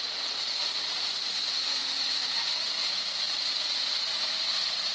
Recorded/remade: remade